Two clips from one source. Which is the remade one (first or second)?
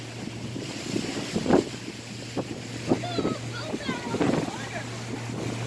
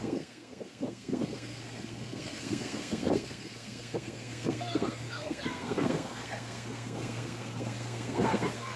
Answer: second